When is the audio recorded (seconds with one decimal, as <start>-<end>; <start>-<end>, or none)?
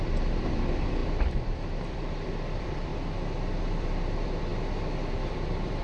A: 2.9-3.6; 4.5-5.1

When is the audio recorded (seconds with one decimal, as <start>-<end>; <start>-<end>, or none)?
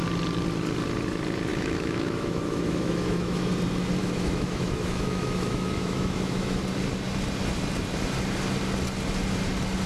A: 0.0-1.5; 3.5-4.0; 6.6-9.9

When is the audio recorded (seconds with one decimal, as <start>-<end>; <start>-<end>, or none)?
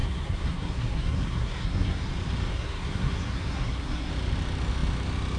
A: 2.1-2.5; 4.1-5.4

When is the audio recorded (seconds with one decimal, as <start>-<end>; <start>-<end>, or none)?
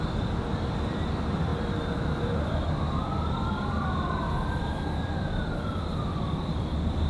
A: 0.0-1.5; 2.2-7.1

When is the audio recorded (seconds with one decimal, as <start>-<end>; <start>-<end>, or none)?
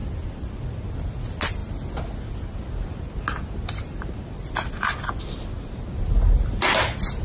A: 0.9-7.2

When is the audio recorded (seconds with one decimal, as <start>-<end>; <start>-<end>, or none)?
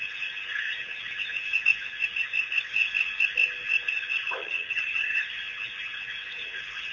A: 0.0-4.4; 5.2-6.9